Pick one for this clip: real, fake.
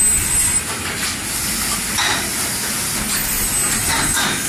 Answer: real